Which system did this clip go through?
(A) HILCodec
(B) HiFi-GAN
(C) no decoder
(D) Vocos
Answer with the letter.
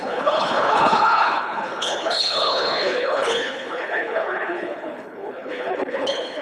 A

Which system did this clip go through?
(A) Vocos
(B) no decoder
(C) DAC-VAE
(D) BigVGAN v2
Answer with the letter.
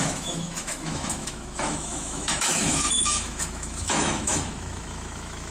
C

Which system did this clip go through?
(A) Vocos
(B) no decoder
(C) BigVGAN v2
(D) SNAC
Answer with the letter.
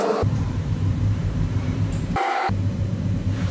C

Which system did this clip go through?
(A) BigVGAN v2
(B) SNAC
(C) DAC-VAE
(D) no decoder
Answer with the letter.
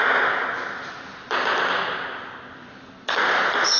D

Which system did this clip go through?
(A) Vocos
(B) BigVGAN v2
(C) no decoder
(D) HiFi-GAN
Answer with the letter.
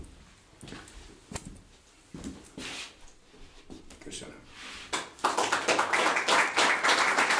C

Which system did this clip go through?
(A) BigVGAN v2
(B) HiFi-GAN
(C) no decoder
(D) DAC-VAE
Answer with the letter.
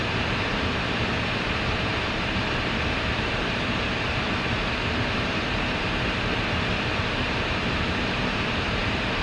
A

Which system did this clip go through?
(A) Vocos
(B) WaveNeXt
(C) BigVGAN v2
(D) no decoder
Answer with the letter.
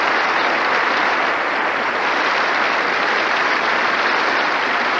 C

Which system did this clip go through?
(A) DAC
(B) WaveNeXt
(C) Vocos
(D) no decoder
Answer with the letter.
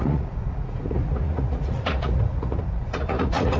C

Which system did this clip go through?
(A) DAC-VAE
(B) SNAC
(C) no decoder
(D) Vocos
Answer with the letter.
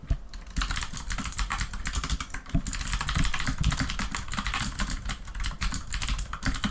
C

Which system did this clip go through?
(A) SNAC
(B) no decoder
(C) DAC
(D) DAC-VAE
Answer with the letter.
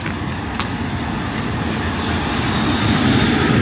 B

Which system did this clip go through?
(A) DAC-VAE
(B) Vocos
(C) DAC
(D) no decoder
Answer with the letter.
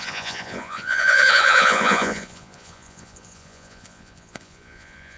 B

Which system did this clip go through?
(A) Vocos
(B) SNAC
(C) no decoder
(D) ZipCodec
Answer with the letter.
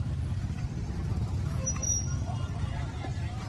C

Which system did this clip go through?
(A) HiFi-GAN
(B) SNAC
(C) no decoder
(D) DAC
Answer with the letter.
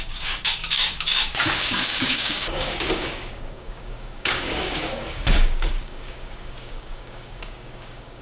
D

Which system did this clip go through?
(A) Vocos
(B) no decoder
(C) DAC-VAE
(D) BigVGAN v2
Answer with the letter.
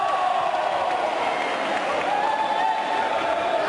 B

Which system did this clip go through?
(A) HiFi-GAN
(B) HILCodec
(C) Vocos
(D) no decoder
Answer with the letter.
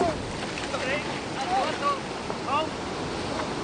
D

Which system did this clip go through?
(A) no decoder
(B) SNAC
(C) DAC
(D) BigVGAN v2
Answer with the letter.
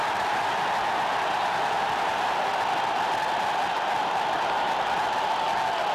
A